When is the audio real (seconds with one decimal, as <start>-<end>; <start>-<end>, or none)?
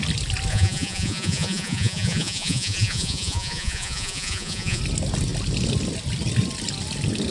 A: 0.0-0.5; 4.8-7.3